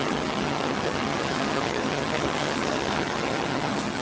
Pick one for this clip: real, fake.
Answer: fake